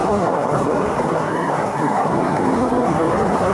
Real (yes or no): no